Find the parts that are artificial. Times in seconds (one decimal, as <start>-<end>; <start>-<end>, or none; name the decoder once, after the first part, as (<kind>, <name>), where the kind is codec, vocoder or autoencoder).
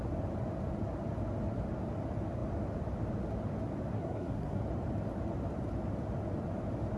3.9-4.6 (codec, SNAC)